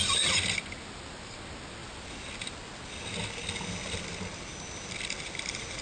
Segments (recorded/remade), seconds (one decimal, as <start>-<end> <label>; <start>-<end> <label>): 0.0-5.8 recorded